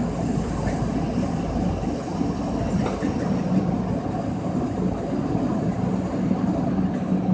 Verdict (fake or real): real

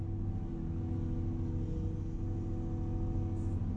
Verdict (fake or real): real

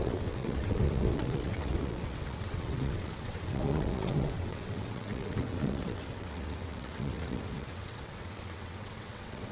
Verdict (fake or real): fake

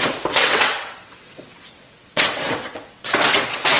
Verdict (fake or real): fake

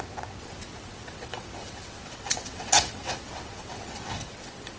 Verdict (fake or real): fake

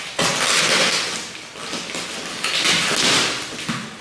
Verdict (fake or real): real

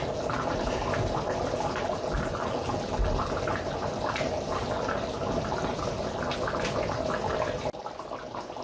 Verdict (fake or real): real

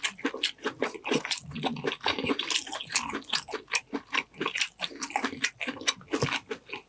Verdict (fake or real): real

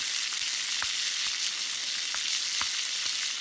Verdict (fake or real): real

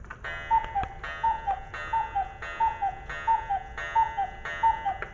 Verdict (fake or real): real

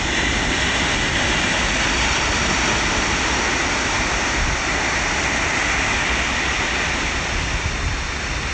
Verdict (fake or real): real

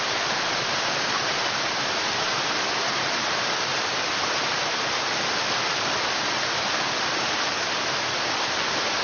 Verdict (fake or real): real